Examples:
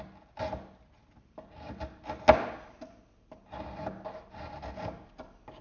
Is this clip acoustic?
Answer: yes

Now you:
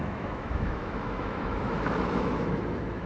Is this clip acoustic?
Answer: no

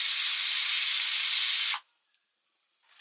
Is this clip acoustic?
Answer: yes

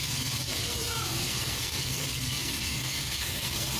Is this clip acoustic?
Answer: no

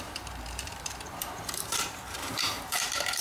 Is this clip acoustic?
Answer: no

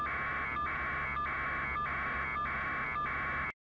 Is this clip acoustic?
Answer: yes